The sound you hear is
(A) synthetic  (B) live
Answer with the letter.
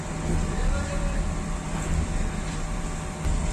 B